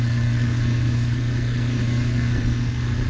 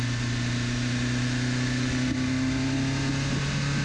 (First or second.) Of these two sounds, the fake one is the first